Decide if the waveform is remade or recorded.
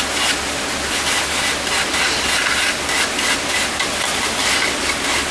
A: recorded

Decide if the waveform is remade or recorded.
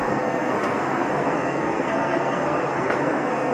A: remade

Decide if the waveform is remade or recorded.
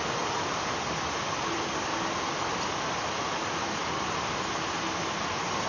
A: recorded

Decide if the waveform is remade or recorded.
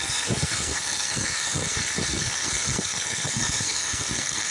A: remade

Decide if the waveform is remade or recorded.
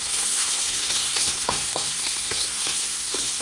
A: remade